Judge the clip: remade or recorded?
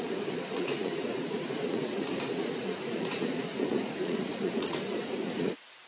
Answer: remade